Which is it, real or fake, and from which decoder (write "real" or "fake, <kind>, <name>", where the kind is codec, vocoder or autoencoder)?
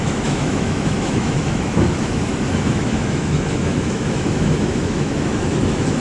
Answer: fake, autoencoder, DAC-VAE